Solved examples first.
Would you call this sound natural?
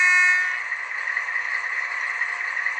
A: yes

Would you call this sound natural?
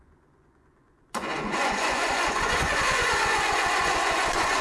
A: no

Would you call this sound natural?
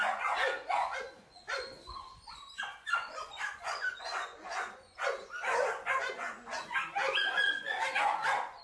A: no